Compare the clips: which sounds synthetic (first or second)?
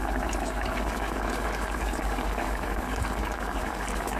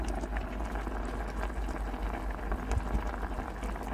first